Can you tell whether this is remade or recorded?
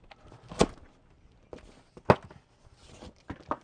recorded